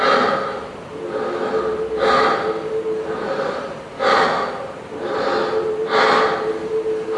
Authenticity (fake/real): real